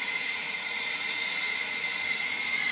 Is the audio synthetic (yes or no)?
yes